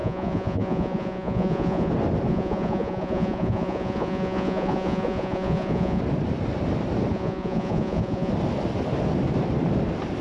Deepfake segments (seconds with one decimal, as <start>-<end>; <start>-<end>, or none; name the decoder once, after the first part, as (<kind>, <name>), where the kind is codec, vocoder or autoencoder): 0.0-1.9 (vocoder, Vocos); 2.3-6.0; 7.1-8.3